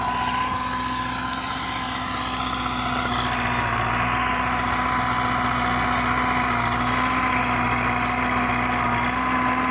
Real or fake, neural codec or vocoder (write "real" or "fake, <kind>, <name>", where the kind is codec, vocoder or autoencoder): real